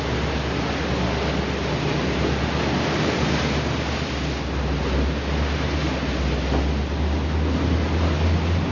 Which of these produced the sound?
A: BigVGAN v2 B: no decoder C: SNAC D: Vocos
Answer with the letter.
B